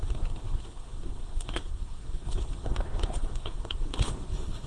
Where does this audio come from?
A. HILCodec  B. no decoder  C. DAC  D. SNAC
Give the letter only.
D